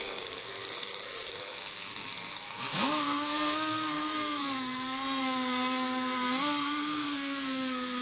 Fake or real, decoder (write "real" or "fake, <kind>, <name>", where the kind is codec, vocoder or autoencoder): fake, codec, SNAC